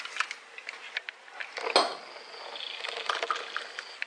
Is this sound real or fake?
real